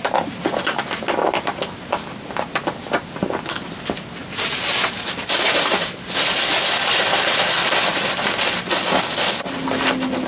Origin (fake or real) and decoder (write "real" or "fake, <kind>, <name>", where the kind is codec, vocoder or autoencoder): real